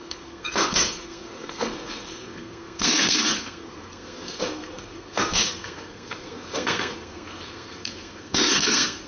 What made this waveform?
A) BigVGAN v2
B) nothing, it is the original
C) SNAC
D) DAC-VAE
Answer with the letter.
C